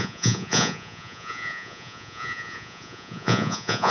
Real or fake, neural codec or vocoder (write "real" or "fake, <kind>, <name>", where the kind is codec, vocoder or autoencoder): fake, vocoder, Vocos